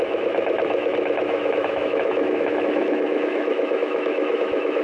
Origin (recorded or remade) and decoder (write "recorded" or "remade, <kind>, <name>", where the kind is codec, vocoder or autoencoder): remade, autoencoder, DAC-VAE